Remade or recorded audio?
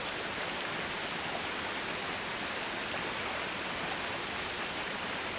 recorded